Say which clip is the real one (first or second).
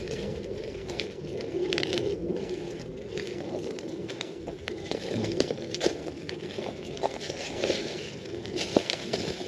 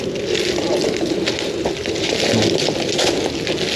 second